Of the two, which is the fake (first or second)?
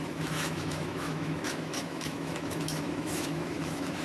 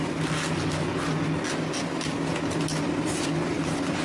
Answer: first